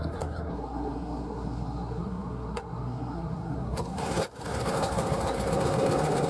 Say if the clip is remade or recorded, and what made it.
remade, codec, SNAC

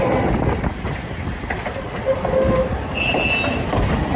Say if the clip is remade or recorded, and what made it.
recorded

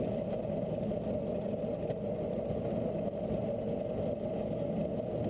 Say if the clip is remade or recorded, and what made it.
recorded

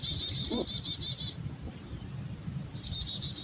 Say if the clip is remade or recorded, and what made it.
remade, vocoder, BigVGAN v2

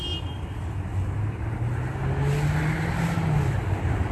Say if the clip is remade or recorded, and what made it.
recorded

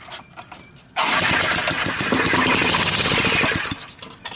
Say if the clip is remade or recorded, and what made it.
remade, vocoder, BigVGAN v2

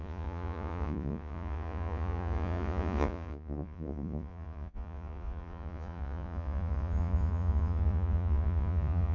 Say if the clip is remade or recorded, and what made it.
remade, vocoder, Vocos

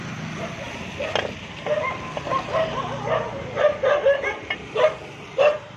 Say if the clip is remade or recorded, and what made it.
recorded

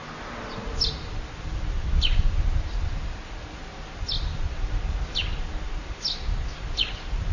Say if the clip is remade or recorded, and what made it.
recorded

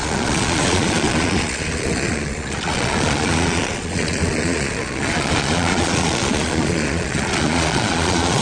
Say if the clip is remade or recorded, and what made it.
remade, vocoder, Vocos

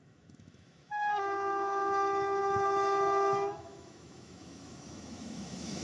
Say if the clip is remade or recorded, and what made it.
remade, autoencoder, DAC-VAE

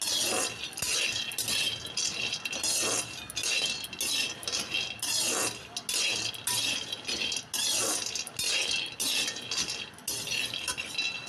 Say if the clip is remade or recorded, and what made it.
recorded